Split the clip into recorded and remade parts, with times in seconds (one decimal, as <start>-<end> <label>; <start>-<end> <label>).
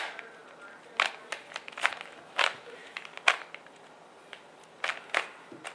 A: 0.0-5.7 recorded